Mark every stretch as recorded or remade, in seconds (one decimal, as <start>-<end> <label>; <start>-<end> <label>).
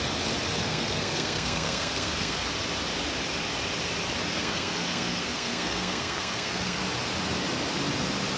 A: 0.0-0.6 recorded; 0.6-2.4 remade; 2.4-4.3 recorded; 4.3-6.8 remade; 6.8-8.4 recorded